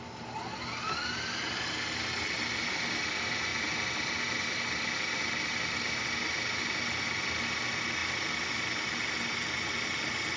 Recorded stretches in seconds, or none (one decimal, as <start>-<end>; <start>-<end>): 0.0-10.4